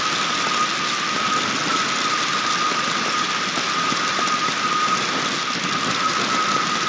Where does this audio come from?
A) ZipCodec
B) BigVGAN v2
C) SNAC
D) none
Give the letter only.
D